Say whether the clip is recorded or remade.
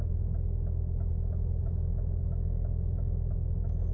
remade